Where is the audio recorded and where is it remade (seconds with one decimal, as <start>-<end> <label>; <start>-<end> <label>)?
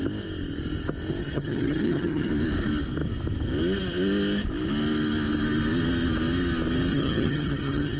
0.0-1.2 recorded; 1.2-2.3 remade; 2.3-6.9 recorded; 6.9-8.0 remade